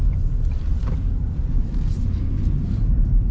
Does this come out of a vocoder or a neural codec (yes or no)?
yes